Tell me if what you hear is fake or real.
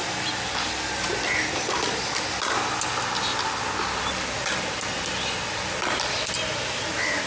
real